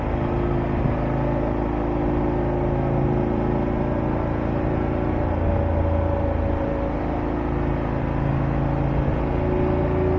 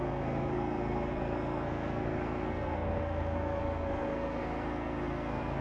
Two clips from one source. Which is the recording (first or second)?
first